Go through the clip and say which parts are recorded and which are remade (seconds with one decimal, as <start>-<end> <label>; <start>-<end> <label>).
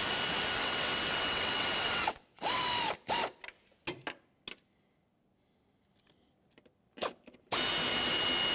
0.0-0.6 recorded; 0.6-2.6 remade; 2.6-8.5 recorded